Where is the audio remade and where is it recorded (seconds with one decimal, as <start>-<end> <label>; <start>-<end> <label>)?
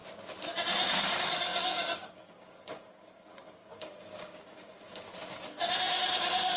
0.0-0.9 recorded; 0.9-5.1 remade; 5.1-6.0 recorded; 6.0-6.6 remade